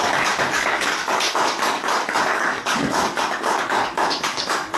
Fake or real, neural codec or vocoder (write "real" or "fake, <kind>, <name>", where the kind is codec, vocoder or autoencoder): fake, codec, DAC